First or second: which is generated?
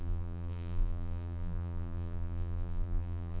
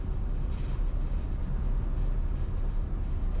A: first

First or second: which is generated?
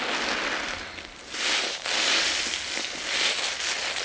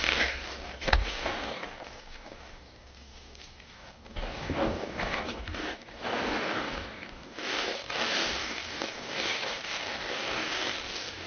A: second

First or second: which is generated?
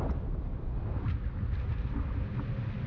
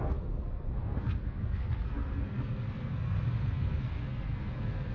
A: second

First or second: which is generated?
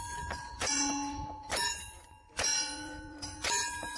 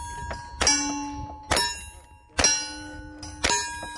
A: first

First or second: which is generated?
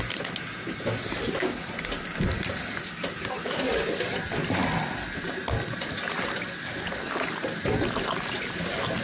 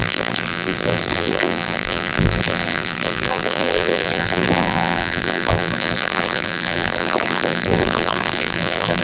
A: second